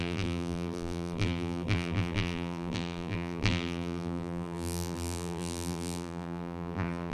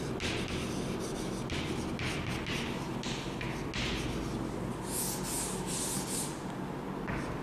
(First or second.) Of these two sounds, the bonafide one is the second